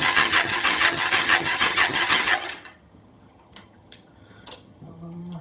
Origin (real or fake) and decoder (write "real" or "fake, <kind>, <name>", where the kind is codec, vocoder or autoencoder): fake, vocoder, HiFi-GAN